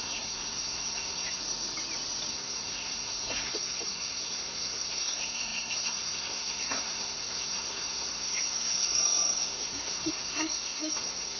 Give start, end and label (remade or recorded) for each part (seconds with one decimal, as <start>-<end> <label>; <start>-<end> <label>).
0.0-1.4 remade; 1.4-2.3 recorded; 2.3-11.4 remade